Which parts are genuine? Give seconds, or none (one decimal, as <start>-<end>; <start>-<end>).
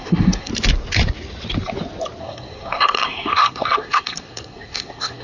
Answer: 0.5-2.2